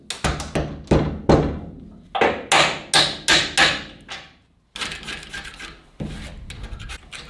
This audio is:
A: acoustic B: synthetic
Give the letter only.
A